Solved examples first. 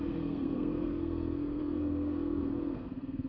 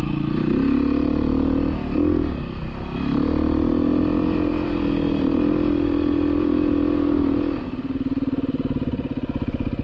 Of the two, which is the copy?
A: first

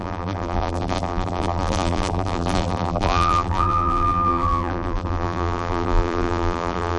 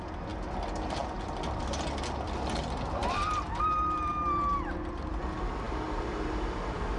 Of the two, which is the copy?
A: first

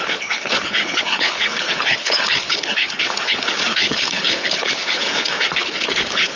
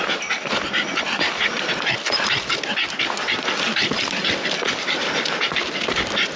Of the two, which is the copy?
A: first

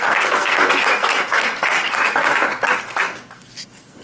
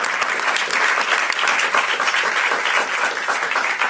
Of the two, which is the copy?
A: first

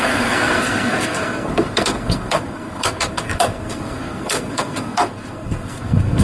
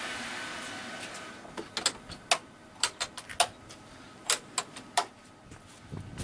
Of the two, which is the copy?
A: first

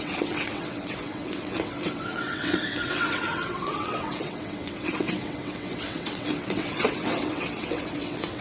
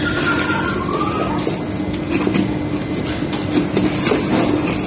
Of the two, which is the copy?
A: first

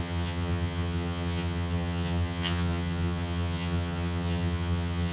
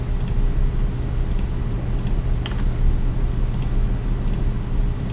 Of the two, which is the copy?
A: first